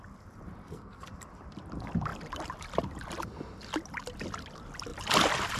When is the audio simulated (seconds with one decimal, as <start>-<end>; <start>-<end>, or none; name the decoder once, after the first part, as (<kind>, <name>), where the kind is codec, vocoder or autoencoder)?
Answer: 0.6-1.1 (codec, SNAC)